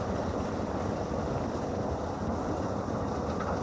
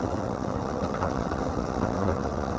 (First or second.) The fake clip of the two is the second